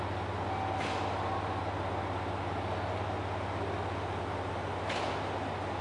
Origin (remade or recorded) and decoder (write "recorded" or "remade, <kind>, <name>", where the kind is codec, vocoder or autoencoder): recorded